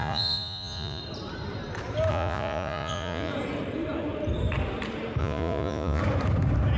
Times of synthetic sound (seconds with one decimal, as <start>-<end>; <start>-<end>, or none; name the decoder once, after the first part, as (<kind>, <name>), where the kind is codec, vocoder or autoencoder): 0.0-1.0 (vocoder, Vocos); 2.1-3.3; 5.2-6.0